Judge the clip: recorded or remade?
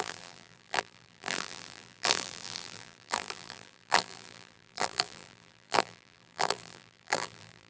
remade